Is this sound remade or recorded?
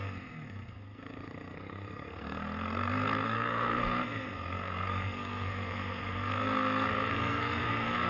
remade